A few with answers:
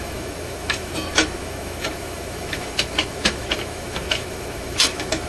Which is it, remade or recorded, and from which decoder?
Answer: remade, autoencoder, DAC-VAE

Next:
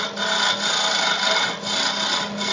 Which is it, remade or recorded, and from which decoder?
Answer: recorded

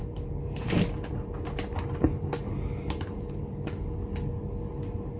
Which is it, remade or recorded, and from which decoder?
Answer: recorded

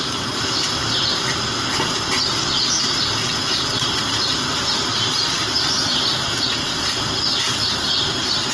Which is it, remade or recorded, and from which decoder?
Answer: recorded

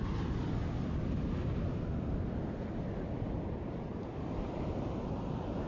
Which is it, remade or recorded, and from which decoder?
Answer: recorded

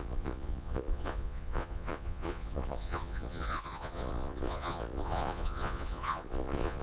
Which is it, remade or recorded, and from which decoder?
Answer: remade, vocoder, Vocos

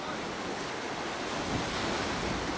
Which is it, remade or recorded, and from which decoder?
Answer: recorded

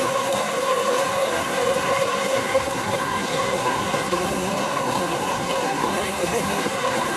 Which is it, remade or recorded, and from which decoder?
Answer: remade, codec, SNAC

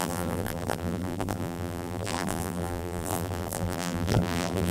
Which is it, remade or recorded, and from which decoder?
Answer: remade, vocoder, BigVGAN v2